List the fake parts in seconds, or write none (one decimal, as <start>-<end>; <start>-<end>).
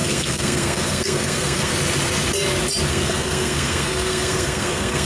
0.0-1.7; 2.9-5.1